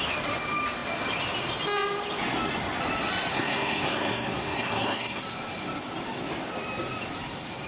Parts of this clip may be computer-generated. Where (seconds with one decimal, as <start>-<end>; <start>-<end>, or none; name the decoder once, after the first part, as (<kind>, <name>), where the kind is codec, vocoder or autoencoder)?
3.3-5.2 (codec, SNAC)